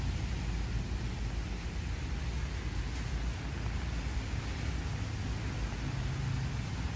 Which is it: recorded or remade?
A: recorded